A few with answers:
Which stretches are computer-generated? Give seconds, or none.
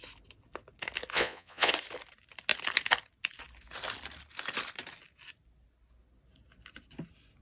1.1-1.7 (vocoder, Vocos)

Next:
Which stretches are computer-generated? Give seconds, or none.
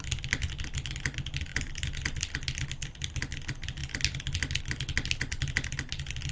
none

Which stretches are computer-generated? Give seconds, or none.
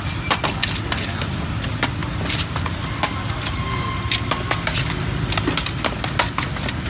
none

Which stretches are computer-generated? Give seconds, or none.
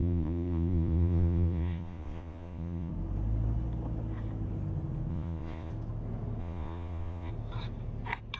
0.0-2.9 (vocoder, Vocos); 5.1-5.7; 6.4-7.3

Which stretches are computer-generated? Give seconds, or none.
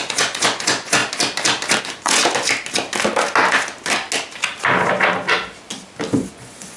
0.0-1.0 (vocoder, Vocos); 1.8-2.2; 6.3-6.8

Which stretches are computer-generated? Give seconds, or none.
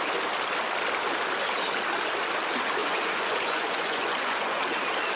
2.8-4.6 (vocoder, Vocos)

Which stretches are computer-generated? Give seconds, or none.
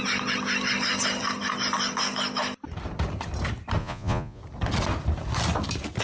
3.8-4.4 (vocoder, Vocos)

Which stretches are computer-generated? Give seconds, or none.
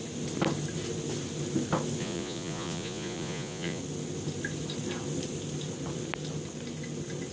2.0-3.8 (vocoder, Vocos)